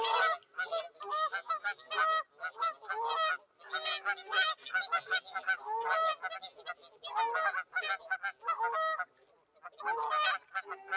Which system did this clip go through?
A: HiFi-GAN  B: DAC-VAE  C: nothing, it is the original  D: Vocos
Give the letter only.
C